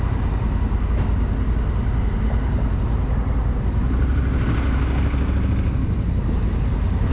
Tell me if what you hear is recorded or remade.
recorded